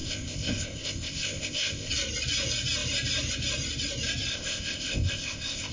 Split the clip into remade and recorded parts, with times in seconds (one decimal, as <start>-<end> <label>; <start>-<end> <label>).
0.0-1.9 remade; 1.9-4.3 recorded; 4.3-5.7 remade